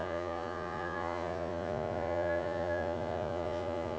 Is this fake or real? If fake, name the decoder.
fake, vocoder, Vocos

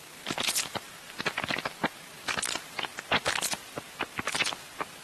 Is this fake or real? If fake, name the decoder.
real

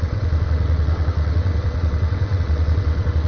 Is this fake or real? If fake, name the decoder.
fake, vocoder, WaveNeXt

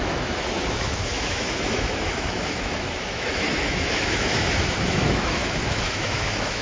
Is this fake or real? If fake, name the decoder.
fake, autoencoder, DAC-VAE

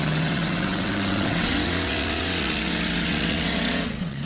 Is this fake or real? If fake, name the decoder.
fake, vocoder, WaveNeXt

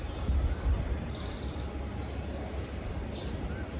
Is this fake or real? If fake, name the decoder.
real